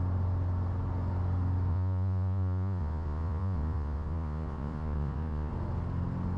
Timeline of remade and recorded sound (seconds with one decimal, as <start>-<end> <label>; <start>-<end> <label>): 0.0-1.7 recorded; 1.7-5.5 remade; 5.5-6.4 recorded